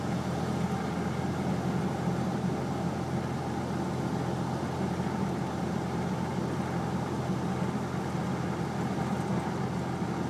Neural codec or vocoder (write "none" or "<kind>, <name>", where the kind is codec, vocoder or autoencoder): none